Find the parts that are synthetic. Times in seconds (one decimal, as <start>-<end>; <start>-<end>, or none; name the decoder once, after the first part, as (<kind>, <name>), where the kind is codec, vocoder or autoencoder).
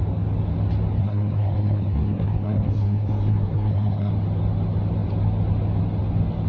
1.0-4.1 (codec, SNAC)